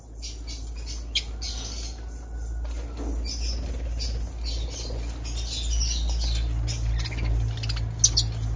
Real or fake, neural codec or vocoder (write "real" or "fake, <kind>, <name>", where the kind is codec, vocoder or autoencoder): real